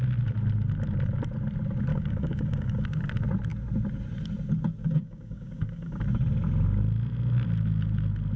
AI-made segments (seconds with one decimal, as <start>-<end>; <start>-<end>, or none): 1.9-3.1; 4.8-6.0